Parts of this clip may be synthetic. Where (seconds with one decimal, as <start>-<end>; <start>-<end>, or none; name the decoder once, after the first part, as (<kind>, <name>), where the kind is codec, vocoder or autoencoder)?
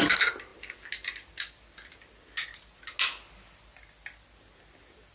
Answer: none